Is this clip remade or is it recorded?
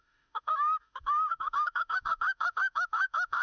remade